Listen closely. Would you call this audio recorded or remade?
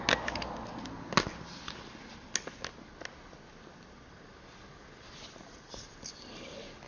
recorded